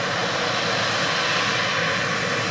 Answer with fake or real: real